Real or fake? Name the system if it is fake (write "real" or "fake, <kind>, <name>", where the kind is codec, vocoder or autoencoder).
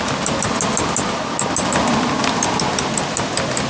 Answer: real